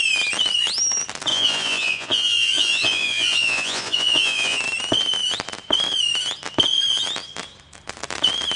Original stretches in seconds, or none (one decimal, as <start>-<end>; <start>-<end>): 0.0-1.3; 4.6-8.6